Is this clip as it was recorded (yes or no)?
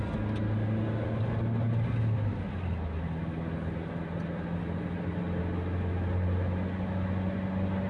yes